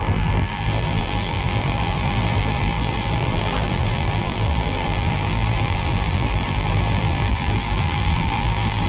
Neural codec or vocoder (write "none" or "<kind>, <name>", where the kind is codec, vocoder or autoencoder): vocoder, BigVGAN v2